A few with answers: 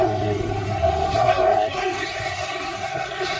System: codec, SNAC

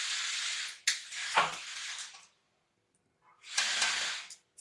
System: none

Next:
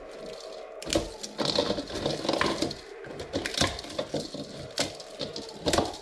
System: none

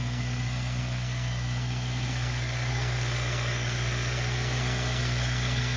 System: codec, SNAC